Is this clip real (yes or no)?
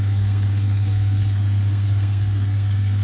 no